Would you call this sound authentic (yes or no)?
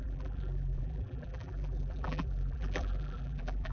no